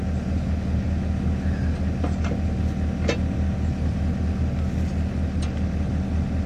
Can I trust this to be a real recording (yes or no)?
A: yes